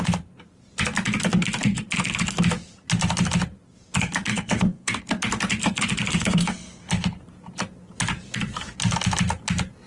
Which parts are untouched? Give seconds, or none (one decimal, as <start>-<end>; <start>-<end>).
0.0-4.3; 5.0-6.1; 6.9-9.9